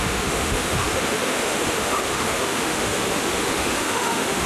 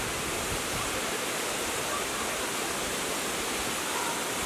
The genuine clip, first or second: second